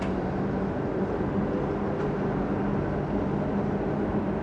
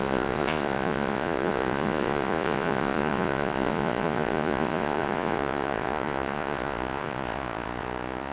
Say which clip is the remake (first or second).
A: second